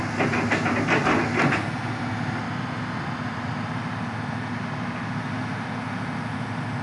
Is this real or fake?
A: real